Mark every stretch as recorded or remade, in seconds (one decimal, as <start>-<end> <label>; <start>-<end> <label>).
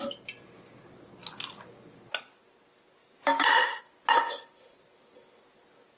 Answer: 0.0-3.0 recorded; 3.0-3.8 remade; 3.8-6.0 recorded